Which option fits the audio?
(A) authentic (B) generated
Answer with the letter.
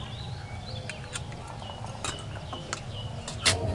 A